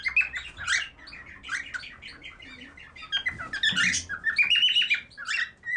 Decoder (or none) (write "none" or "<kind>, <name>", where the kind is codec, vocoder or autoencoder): none